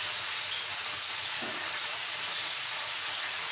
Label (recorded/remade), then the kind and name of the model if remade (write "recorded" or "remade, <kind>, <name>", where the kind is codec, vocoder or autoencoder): remade, vocoder, Vocos